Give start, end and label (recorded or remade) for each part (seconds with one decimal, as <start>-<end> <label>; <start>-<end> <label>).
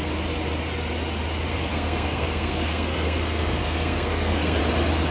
0.0-1.5 recorded; 1.5-4.6 remade; 4.6-5.1 recorded